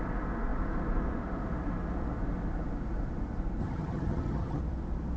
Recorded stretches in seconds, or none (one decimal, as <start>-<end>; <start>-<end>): 0.0-3.6; 4.6-5.2